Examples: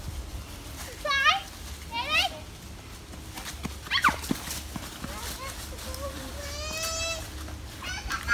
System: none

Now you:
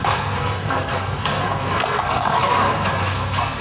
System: codec, SNAC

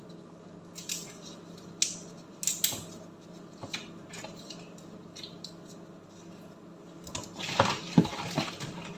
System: none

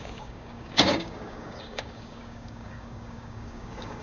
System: codec, DAC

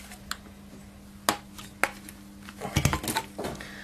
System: none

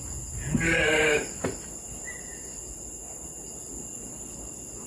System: none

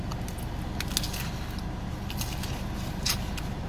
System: none